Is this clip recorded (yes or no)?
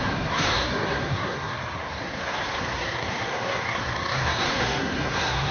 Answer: no